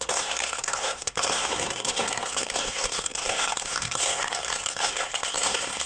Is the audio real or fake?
fake